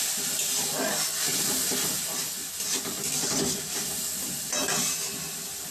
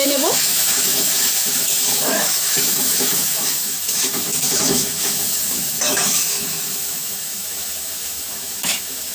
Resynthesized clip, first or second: second